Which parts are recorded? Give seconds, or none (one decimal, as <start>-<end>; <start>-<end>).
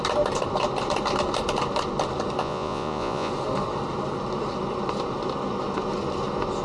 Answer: 0.0-2.4; 3.3-6.6